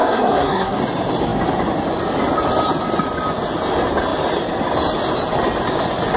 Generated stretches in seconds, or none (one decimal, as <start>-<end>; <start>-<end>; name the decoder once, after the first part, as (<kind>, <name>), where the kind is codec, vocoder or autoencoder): 0.0-0.8 (codec, SNAC)